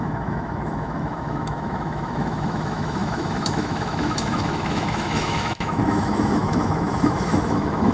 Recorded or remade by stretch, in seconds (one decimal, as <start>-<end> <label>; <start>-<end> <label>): 0.0-7.9 remade